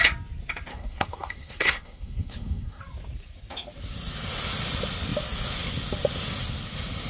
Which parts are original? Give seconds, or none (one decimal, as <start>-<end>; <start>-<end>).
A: 0.0-0.7; 2.8-7.1